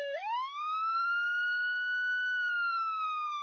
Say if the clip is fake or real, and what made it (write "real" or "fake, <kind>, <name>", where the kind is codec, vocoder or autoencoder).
fake, codec, SNAC